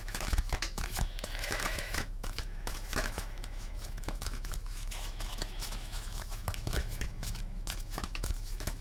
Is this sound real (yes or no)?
no